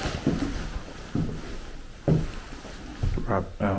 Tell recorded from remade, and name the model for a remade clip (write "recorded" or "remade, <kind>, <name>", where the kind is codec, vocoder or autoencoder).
recorded